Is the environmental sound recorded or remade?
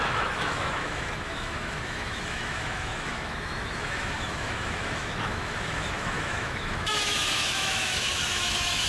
remade